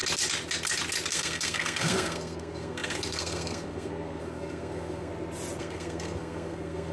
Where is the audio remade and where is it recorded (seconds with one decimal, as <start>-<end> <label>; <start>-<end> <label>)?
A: 0.0-1.1 recorded; 1.1-5.1 remade; 5.1-5.6 recorded; 5.6-6.9 remade